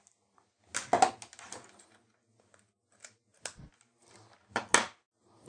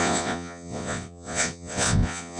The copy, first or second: second